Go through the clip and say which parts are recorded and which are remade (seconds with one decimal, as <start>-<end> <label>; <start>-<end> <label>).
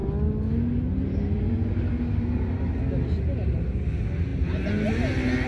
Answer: 0.0-5.5 recorded